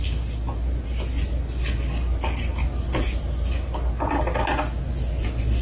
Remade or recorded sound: recorded